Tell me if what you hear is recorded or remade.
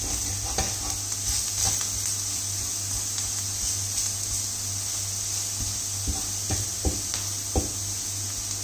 recorded